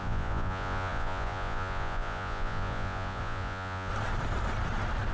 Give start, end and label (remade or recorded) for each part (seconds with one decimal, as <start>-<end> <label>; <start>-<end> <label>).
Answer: 0.0-3.9 remade; 3.9-5.1 recorded

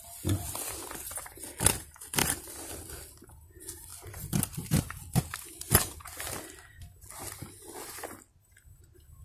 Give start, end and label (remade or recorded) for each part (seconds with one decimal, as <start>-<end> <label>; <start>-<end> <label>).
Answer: 0.0-9.2 recorded

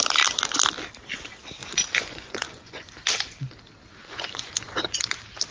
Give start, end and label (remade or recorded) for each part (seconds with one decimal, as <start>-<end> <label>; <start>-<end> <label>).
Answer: 0.0-1.6 recorded; 1.6-2.9 remade; 2.9-4.0 recorded; 4.0-5.0 remade; 5.0-5.5 recorded

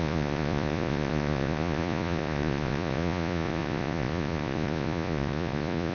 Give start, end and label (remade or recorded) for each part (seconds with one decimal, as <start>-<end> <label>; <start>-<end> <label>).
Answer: 0.0-5.9 remade

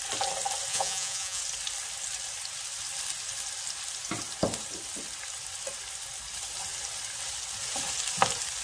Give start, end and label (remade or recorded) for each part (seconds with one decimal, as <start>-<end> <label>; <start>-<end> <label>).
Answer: 0.0-0.7 recorded; 0.7-1.4 remade; 1.4-8.6 recorded

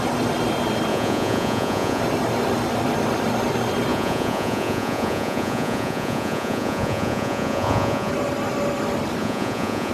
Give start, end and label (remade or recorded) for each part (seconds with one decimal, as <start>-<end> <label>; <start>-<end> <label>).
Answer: 0.0-0.9 recorded; 0.9-2.0 remade; 2.0-3.9 recorded; 3.9-8.1 remade; 8.1-9.2 recorded; 9.2-9.9 remade

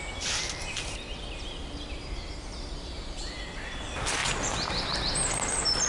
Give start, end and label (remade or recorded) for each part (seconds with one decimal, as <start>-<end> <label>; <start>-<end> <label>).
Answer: 0.0-5.9 recorded

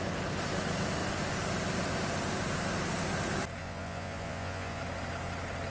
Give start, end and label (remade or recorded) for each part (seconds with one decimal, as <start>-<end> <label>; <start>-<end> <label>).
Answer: 0.0-3.6 recorded; 3.6-4.8 remade; 4.8-5.7 recorded